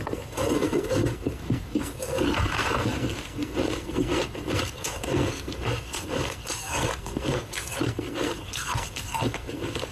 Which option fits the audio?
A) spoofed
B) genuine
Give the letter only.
A